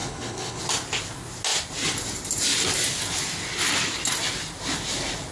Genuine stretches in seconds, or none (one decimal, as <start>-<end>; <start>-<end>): 0.6-5.3